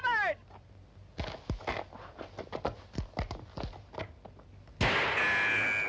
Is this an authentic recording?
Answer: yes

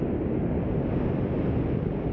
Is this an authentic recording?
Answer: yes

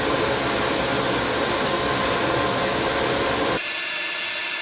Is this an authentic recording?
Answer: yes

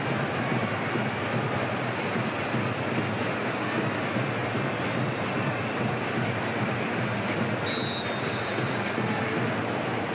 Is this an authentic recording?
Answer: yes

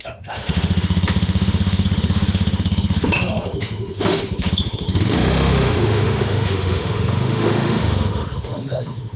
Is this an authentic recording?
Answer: no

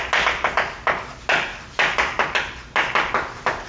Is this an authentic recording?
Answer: yes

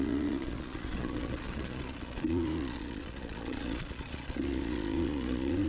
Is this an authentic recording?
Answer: no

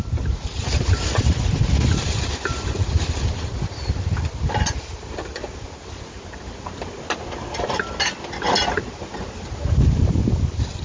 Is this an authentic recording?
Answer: yes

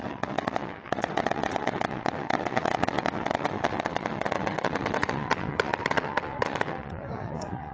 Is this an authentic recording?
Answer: no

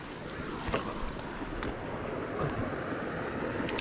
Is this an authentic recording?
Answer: yes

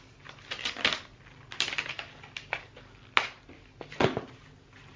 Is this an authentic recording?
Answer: yes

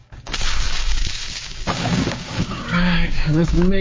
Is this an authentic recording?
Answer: no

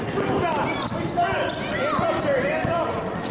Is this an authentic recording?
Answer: yes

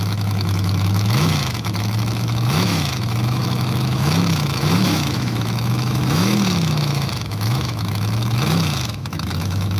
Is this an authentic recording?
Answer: no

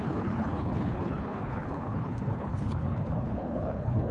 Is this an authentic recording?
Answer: no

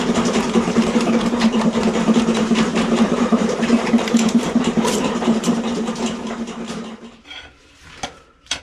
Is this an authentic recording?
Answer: no